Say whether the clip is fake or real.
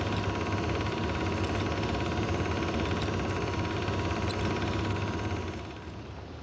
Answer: real